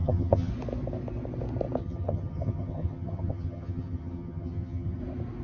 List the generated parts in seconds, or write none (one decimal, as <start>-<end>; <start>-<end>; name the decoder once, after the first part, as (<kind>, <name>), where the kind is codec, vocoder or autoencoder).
0.0-0.5 (vocoder, HiFi-GAN); 1.8-5.0